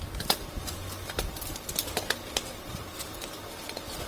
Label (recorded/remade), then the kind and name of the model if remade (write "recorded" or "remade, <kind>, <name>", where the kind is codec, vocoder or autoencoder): remade, vocoder, BigVGAN v2